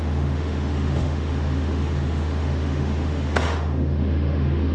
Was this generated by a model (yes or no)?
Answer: yes